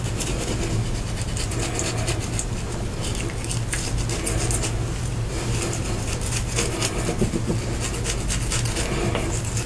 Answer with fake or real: real